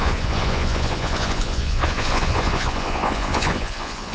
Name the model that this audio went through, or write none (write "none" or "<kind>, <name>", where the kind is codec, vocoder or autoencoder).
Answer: vocoder, Vocos